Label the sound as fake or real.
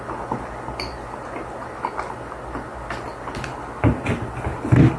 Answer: real